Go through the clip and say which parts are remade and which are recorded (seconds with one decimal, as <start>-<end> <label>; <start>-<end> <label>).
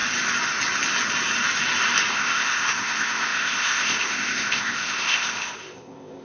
0.0-2.1 recorded; 2.1-6.2 remade